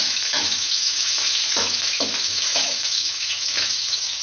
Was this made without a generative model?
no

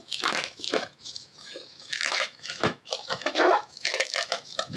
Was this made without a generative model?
no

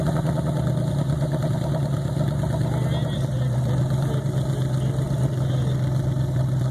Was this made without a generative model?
yes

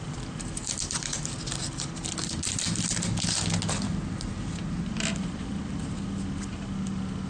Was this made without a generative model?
yes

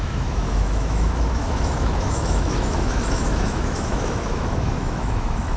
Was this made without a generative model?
no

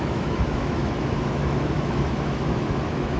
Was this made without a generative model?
no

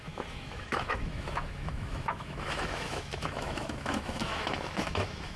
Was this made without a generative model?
no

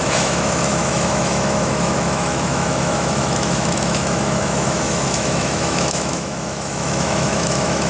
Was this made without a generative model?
no